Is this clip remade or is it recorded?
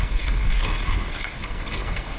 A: remade